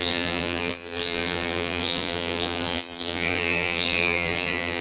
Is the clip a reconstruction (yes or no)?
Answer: yes